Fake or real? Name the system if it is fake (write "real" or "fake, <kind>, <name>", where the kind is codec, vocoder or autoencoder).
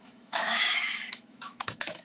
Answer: fake, autoencoder, DAC-VAE